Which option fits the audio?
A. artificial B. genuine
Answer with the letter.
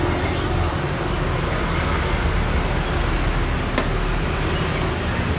B